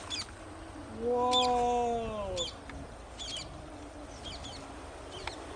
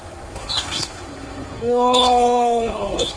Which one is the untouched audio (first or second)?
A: first